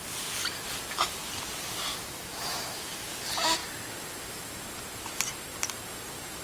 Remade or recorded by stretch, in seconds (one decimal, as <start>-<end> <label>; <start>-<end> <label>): 0.0-1.9 recorded; 1.9-3.2 remade; 3.2-6.4 recorded

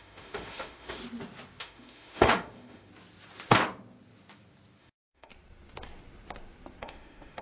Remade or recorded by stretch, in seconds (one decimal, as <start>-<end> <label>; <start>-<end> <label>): 0.0-1.0 remade; 1.0-1.6 recorded; 1.6-2.9 remade; 2.9-4.8 recorded; 4.8-5.3 remade; 5.3-6.8 recorded; 6.8-7.4 remade

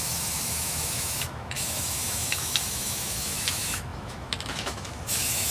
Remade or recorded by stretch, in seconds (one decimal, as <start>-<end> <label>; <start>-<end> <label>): 0.0-5.5 remade

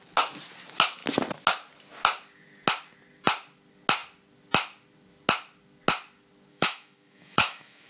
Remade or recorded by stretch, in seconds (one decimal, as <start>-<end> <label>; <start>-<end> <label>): 0.0-6.5 recorded; 6.5-7.9 remade

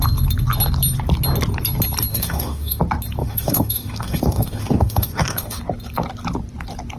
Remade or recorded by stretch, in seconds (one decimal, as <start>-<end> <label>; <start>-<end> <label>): 0.0-2.1 recorded; 2.1-2.8 remade; 2.8-3.2 recorded; 3.2-5.6 remade; 5.6-7.0 recorded